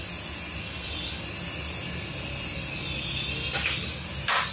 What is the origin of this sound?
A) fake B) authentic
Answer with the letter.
B